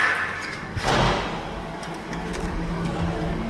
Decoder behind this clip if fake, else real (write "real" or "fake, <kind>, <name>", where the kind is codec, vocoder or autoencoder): fake, codec, DAC